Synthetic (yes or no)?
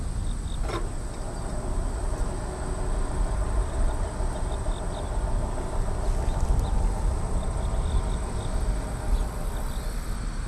no